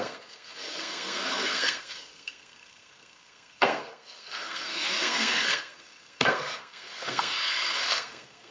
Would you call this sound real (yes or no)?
no